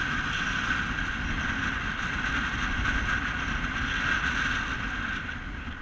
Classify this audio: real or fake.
real